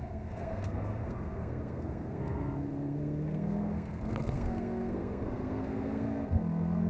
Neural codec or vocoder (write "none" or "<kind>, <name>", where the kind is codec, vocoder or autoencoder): codec, SNAC